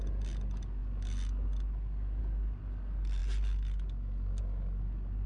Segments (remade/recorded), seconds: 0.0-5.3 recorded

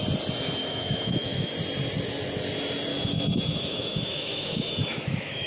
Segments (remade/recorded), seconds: 0.0-0.6 recorded; 0.6-1.5 remade; 1.5-2.9 recorded; 2.9-5.5 remade

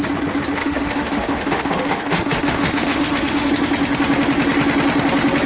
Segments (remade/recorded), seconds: 0.0-0.6 recorded; 0.6-3.5 remade; 3.5-5.5 recorded

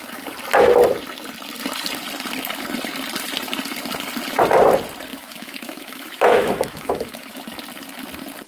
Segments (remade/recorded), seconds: 0.0-5.1 recorded; 5.1-7.4 remade; 7.4-8.5 recorded

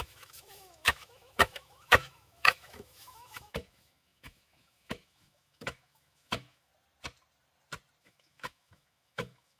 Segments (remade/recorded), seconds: 0.0-6.7 remade; 6.7-8.0 recorded; 8.0-9.6 remade

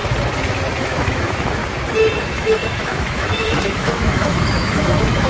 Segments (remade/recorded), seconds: 0.0-0.8 recorded; 0.8-1.6 remade; 1.6-2.2 recorded; 2.2-5.3 remade